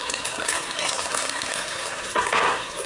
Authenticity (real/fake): fake